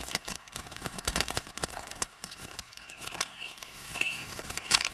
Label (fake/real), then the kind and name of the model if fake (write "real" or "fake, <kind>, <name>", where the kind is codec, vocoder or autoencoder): fake, codec, SNAC